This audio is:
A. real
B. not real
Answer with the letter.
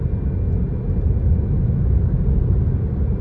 A